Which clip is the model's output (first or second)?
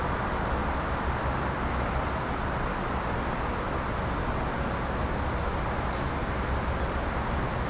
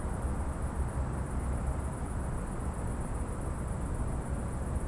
second